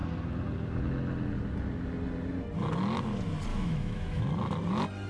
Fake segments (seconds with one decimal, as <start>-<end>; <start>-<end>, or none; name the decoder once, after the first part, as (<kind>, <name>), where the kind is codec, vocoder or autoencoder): 3.5-4.2 (autoencoder, DAC-VAE)